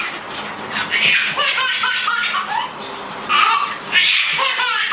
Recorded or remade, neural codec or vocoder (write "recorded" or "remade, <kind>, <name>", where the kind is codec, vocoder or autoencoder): recorded